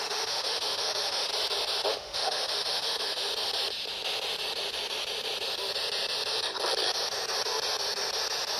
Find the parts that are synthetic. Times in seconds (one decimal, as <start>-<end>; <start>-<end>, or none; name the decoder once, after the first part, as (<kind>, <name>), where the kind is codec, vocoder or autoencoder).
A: 0.0-1.3 (autoencoder, DAC-VAE); 1.9-3.3